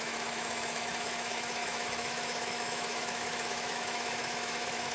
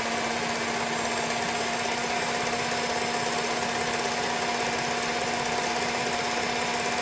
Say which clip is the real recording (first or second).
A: second